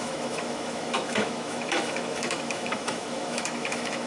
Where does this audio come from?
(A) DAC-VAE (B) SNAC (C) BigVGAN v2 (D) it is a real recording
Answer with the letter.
A